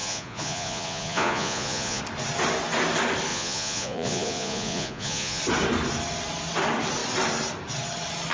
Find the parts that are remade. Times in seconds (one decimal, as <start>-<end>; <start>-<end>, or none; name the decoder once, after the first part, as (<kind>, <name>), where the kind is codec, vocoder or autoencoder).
0.0-2.0 (vocoder, Vocos); 3.3-5.4